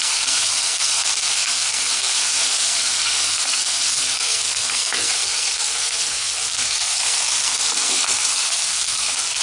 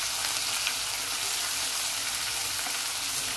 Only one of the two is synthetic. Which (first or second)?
first